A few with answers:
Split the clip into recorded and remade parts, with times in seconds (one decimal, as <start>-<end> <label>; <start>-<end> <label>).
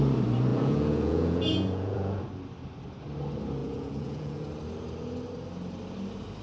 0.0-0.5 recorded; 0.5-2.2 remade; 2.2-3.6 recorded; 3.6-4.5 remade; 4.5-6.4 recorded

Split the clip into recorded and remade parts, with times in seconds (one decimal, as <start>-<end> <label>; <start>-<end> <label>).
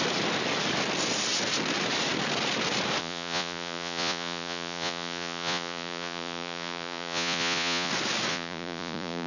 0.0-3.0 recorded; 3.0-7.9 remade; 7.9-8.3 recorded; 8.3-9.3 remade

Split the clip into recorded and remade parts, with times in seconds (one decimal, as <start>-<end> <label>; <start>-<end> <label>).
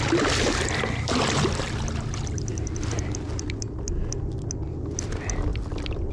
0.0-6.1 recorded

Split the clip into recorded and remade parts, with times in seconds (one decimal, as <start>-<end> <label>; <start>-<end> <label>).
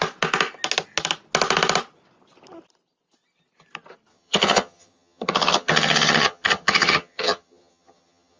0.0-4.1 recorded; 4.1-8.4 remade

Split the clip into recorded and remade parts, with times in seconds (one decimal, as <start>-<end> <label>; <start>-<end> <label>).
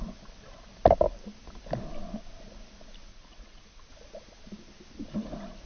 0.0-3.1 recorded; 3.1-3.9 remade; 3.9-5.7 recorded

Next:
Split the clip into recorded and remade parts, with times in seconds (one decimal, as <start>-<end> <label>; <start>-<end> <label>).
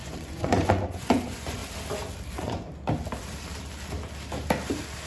0.0-1.6 remade; 1.6-2.3 recorded; 2.3-2.7 remade; 2.7-5.1 recorded